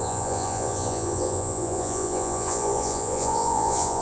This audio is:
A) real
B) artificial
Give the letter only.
B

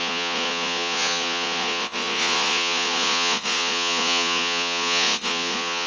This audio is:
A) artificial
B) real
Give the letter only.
A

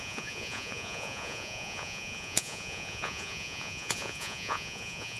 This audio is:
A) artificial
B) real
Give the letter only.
A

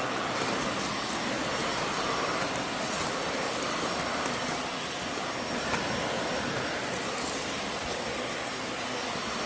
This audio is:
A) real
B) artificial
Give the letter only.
A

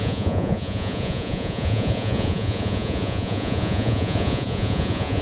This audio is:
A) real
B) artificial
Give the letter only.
B